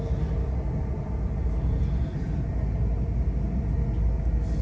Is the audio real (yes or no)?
yes